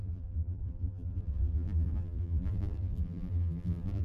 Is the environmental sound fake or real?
fake